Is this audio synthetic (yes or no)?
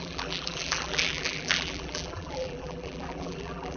yes